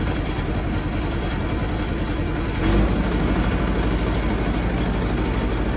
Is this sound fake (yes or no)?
no